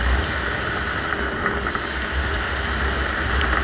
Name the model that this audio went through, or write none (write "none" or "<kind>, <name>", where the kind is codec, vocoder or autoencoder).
none